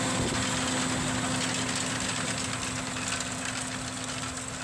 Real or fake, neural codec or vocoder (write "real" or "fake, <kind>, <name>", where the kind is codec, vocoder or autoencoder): real